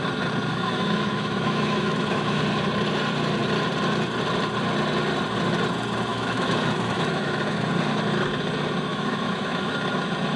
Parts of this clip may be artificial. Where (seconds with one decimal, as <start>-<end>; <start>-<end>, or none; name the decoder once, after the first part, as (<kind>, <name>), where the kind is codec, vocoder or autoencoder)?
0.5-2.4 (autoencoder, DAC-VAE); 6.1-7.7; 8.9-9.7